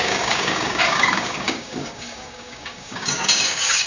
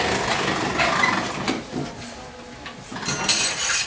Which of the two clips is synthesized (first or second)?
first